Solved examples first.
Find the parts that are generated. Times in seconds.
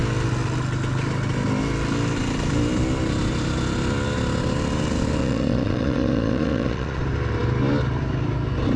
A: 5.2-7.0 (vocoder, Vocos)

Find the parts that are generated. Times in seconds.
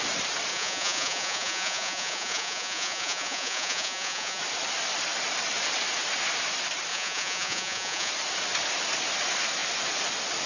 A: 0.5-4.4 (vocoder, Vocos); 6.9-8.1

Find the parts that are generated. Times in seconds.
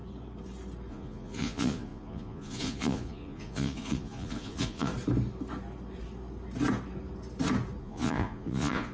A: 0.9-4.9 (vocoder, Vocos); 7.8-8.9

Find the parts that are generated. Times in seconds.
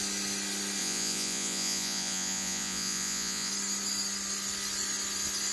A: 0.8-3.5 (vocoder, Vocos)